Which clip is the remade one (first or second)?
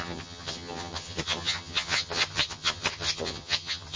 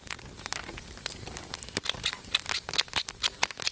first